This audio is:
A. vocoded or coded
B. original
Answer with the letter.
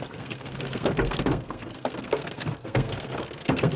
A